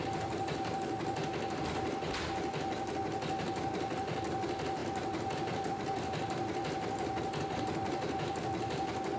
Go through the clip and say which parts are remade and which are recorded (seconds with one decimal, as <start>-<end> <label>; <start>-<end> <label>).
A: 0.0-9.2 recorded